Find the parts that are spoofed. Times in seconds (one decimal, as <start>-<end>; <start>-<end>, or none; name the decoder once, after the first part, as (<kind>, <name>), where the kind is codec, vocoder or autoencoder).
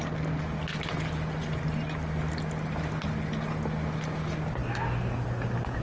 none